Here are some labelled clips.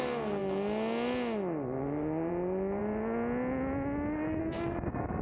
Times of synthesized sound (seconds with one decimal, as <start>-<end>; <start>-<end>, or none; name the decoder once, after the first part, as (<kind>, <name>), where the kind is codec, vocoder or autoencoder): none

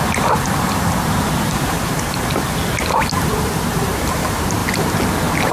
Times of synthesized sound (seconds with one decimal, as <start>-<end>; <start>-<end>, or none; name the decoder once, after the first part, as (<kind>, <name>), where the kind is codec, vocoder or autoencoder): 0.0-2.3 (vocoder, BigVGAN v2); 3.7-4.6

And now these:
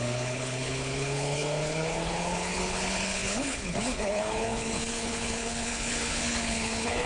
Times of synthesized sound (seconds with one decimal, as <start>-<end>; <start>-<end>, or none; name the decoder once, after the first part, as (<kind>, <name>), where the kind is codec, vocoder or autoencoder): 0.0-7.1 (codec, HILCodec)

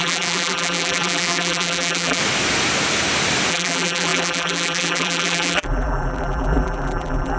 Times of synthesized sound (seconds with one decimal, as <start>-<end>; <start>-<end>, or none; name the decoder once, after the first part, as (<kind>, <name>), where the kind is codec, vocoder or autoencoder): 0.0-2.2 (vocoder, BigVGAN v2); 3.5-7.4

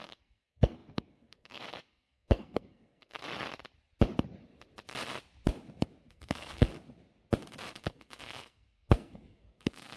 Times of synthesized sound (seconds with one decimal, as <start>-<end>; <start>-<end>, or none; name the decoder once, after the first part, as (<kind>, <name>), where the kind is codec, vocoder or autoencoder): 0.0-3.2 (codec, SNAC); 6.1-6.7; 7.7-10.0

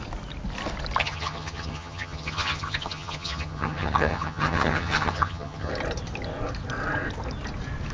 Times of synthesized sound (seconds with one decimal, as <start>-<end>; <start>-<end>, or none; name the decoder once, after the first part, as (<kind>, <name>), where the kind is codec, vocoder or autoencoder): 1.0-5.7 (vocoder, HiFi-GAN)

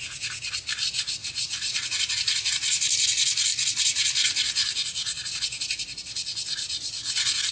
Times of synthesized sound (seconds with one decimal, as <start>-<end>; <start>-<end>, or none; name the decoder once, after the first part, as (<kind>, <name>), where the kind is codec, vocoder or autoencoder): 1.2-2.5 (vocoder, Vocos)

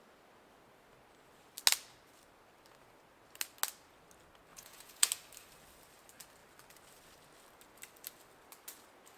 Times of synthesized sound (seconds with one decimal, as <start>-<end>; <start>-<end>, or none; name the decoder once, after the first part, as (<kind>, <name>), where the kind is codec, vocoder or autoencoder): 4.5-5.1 (vocoder, Vocos)